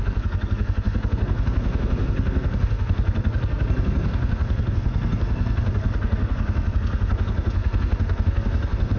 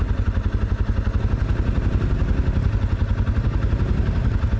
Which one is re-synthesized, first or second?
first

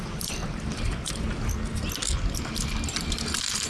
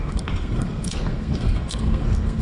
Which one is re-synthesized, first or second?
second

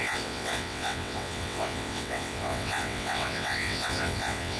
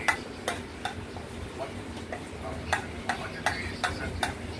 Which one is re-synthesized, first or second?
first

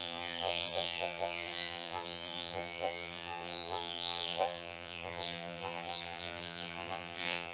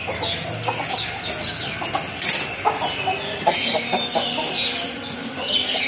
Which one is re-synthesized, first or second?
first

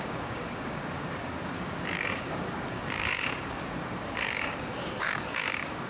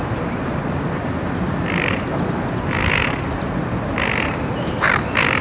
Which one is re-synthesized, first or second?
first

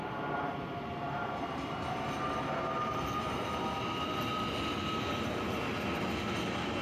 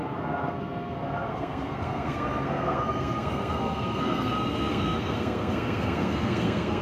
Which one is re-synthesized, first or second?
second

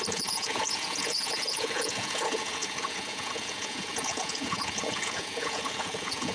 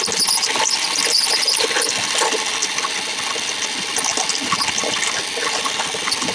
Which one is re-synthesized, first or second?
first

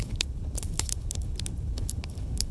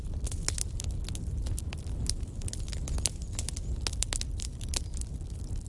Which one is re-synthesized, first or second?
first